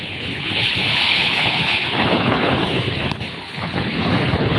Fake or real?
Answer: fake